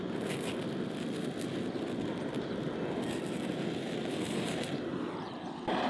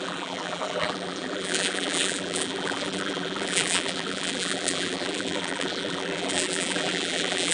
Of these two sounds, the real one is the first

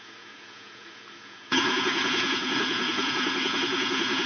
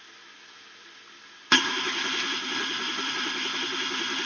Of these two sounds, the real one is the second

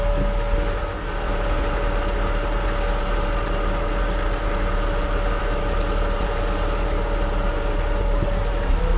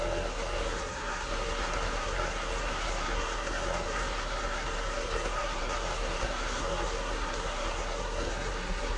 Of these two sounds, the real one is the first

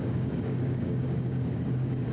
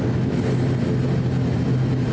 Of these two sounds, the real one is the second